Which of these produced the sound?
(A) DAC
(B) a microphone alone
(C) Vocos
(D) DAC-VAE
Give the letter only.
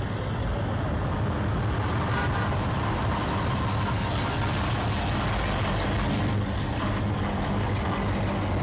B